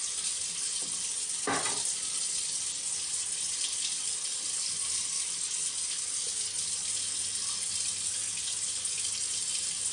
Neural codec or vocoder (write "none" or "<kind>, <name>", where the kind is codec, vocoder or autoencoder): none